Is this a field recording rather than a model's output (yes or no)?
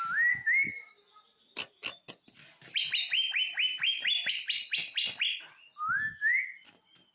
yes